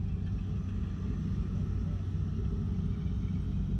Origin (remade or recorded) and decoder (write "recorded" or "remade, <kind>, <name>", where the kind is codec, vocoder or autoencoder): recorded